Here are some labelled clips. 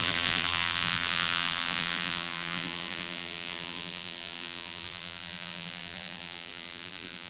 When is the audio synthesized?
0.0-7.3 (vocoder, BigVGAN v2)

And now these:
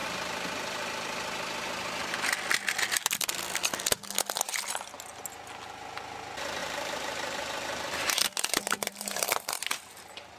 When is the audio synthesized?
6.6-9.7 (vocoder, BigVGAN v2)

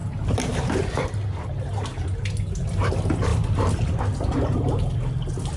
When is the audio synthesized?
0.0-1.1 (vocoder, BigVGAN v2); 3.3-4.0